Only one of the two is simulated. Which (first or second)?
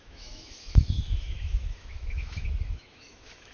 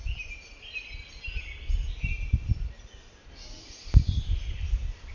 first